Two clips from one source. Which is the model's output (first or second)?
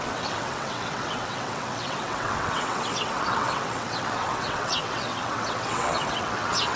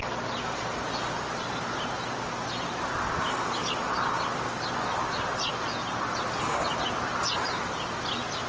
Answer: first